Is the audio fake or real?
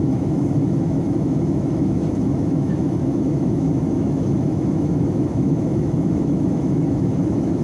fake